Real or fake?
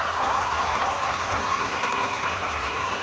fake